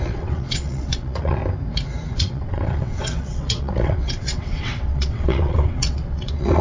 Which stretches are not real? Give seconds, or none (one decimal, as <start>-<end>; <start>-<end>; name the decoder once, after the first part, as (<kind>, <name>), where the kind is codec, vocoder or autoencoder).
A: 0.0-1.4 (vocoder, WaveNeXt); 2.1-6.6